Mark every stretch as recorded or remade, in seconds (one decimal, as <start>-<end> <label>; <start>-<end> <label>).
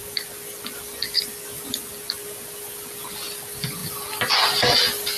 0.0-5.2 recorded